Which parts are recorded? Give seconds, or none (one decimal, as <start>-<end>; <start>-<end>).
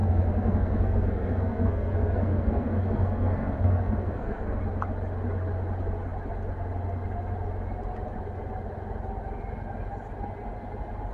4.6-11.1